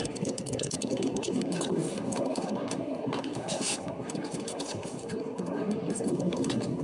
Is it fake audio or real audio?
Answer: fake